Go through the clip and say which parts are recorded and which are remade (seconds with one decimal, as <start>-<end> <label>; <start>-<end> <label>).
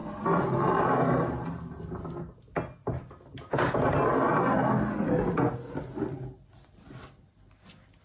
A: 0.0-8.0 recorded